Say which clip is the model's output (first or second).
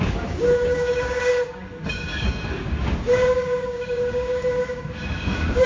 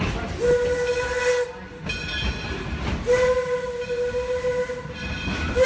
first